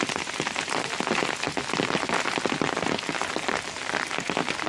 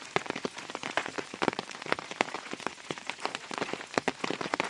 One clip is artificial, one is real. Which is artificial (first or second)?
second